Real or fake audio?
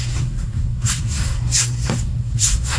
fake